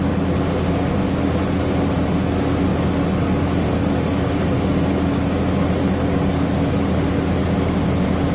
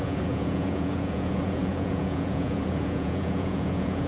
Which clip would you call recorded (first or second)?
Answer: first